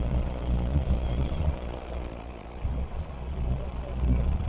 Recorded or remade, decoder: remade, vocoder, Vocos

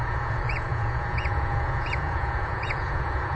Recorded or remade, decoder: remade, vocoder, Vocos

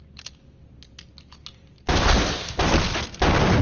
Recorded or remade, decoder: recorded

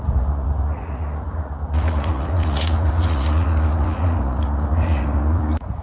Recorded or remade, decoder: remade, vocoder, Vocos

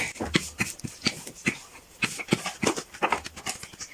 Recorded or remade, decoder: recorded